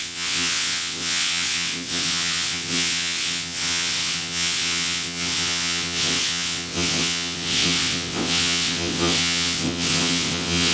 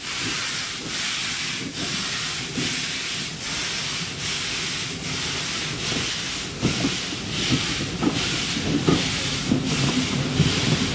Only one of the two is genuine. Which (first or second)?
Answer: second